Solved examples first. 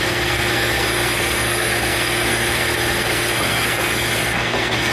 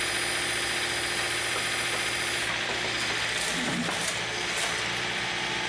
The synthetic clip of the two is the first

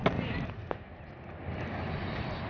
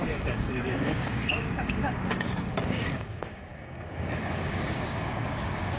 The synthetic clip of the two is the second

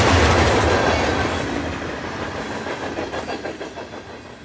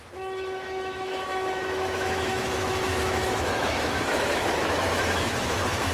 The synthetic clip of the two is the second